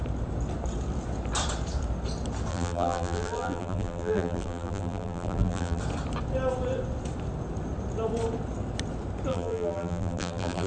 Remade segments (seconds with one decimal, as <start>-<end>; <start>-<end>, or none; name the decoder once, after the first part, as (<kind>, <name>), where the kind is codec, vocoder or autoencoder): 2.5-5.8 (vocoder, BigVGAN v2); 9.3-10.7

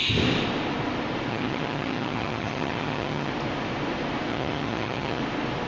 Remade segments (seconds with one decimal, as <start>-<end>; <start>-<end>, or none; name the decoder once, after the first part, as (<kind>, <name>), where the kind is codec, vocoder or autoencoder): 1.3-3.3 (vocoder, HiFi-GAN); 4.3-5.2

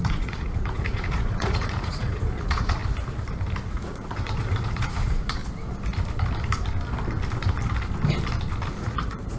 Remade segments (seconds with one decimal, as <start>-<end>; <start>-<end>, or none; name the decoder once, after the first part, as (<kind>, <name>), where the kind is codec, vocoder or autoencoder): 0.0-2.8 (vocoder, Vocos); 3.7-5.4; 8.8-9.4

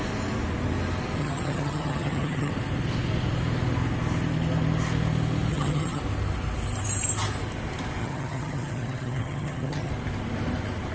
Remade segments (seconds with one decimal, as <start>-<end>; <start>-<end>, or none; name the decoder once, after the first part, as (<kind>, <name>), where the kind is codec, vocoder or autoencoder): 1.2-2.5 (vocoder, HiFi-GAN); 5.5-6.0; 8.0-9.9

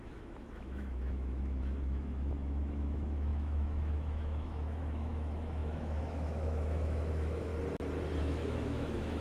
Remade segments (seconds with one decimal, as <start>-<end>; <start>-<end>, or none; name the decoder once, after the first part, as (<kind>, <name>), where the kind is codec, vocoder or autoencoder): 0.0-7.5 (autoencoder, DAC-VAE); 8.2-9.2

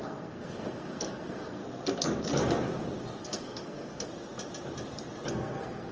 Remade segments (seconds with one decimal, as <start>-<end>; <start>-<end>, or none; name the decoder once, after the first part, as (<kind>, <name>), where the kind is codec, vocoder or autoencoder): 0.0-1.6 (codec, SNAC); 3.2-4.1; 5.3-5.9

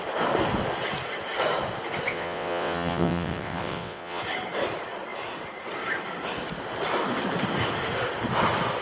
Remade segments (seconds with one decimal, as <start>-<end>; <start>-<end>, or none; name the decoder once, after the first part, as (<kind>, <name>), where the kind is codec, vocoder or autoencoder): 2.1-4.2 (vocoder, WaveNeXt)

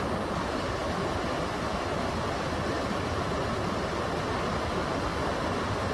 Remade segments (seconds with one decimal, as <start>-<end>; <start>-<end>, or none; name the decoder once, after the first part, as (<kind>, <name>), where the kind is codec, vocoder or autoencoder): none